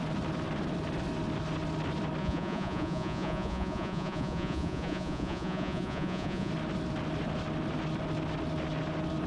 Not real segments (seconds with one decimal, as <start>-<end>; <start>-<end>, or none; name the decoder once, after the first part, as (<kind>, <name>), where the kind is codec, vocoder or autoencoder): 2.2-6.5 (vocoder, Vocos)